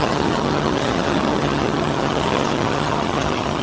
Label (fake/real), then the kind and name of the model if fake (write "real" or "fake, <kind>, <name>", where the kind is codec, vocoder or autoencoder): fake, vocoder, HiFi-GAN